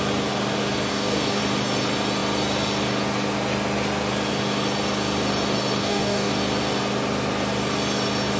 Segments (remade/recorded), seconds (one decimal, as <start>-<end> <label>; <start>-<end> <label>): 0.0-0.9 recorded; 0.9-1.4 remade; 1.4-5.8 recorded; 5.8-6.3 remade; 6.3-8.4 recorded